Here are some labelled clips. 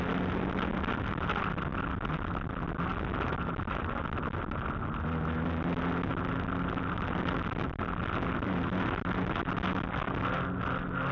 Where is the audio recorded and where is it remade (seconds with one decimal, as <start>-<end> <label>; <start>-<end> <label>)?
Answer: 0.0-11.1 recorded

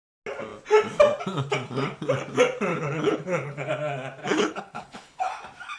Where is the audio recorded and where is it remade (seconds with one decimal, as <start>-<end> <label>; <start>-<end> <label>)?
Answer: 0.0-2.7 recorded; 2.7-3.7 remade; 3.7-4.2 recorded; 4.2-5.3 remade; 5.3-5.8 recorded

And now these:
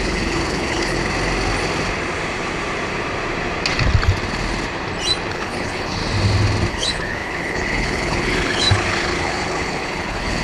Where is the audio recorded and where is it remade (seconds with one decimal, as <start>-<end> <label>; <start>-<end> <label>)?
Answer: 0.0-1.0 remade; 1.0-5.3 recorded; 5.3-6.0 remade; 6.0-6.7 recorded; 6.7-10.4 remade